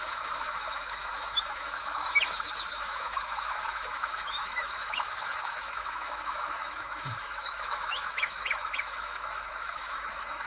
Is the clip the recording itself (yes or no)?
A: no